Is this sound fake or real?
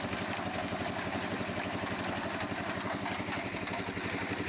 real